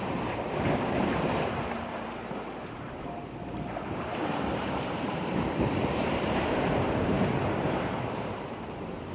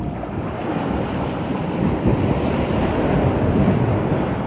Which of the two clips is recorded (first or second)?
second